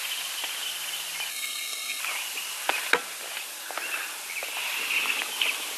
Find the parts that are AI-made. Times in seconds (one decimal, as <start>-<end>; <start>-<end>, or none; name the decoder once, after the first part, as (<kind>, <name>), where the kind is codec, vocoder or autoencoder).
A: 1.3-2.0 (codec, SNAC)